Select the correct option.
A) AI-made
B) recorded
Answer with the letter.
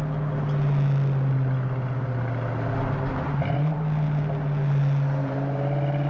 B